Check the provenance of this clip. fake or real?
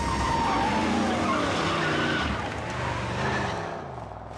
real